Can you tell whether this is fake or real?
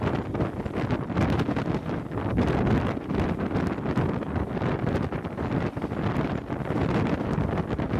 real